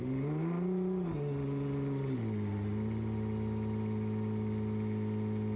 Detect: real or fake real